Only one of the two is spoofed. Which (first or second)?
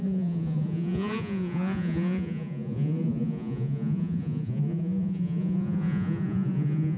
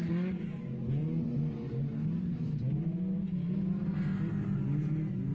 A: first